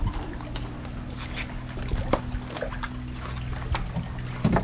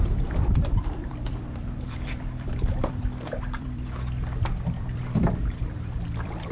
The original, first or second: first